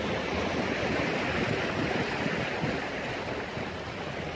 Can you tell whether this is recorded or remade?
recorded